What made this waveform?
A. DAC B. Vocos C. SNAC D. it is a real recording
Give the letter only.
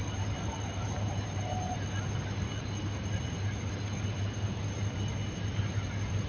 D